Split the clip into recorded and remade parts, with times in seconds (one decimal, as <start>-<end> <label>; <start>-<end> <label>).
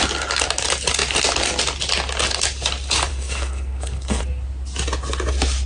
0.0-3.1 recorded; 3.1-4.2 remade; 4.2-5.7 recorded